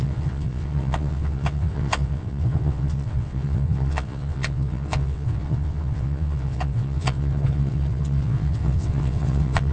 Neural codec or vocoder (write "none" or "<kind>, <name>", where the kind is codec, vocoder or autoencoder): vocoder, WaveNeXt